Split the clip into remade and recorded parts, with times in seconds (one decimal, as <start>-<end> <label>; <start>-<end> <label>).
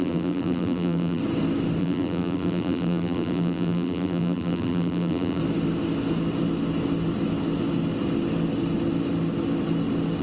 0.0-1.2 remade; 1.2-1.8 recorded; 1.8-5.4 remade; 5.4-10.2 recorded